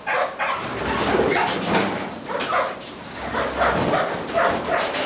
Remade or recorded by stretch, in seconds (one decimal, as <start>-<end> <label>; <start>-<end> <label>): 0.0-5.1 recorded